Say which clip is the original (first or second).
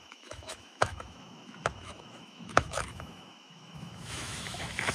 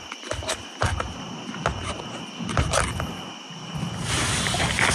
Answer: second